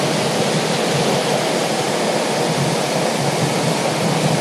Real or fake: real